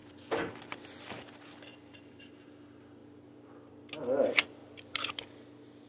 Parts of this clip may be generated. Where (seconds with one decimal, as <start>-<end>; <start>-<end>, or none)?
1.7-2.5